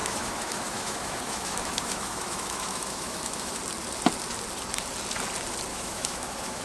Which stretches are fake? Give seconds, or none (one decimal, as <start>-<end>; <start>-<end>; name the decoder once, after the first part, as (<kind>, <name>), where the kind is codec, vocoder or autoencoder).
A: 0.0-3.6 (autoencoder, DAC-VAE); 5.7-6.6